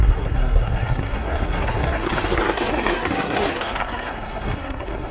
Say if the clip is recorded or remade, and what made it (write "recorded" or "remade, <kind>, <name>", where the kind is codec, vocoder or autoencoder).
remade, codec, SNAC